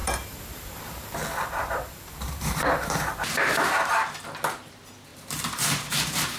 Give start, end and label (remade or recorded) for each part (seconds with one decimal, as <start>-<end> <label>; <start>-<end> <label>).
0.0-1.1 remade; 1.1-1.6 recorded; 1.6-4.2 remade; 4.2-5.1 recorded; 5.1-6.4 remade